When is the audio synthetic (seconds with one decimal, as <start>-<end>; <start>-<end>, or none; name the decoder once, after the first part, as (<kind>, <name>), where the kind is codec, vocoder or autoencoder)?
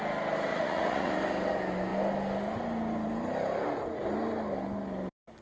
0.5-1.1 (vocoder, Vocos)